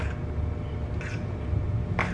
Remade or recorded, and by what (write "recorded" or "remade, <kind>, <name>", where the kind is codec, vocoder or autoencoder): recorded